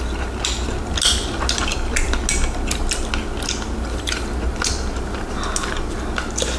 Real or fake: real